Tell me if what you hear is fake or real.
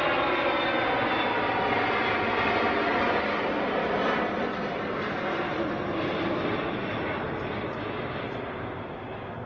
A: real